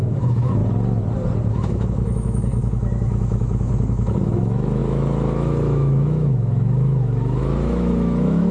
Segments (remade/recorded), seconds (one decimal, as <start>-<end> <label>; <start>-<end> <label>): 0.0-0.6 remade; 0.6-1.5 recorded; 1.5-8.5 remade